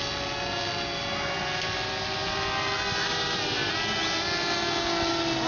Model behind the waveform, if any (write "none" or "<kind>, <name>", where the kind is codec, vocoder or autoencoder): none